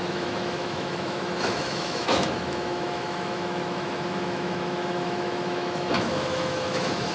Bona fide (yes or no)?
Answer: no